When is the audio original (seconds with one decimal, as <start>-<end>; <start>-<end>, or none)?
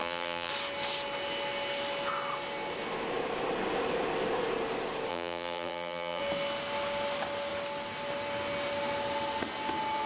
0.5-5.1; 6.2-10.1